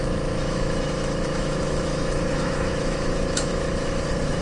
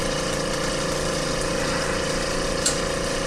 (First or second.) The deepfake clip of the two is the first